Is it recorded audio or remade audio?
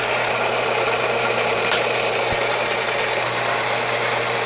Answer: recorded